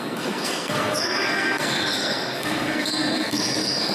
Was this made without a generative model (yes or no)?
no